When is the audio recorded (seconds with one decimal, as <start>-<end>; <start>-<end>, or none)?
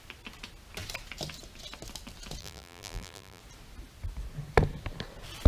0.0-2.4; 3.4-5.5